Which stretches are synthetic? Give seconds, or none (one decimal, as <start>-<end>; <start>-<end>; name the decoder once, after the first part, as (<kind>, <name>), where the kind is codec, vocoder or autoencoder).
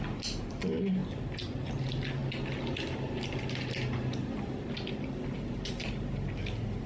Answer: none